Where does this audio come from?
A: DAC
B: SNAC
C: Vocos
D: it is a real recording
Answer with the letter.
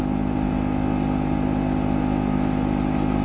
D